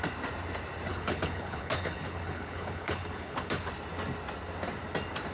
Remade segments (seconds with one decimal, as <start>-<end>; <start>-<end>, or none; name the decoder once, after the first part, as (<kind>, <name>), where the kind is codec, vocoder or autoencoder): 0.9-3.7 (codec, HILCodec)